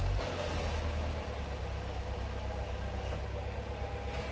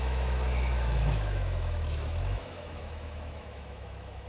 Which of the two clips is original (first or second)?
first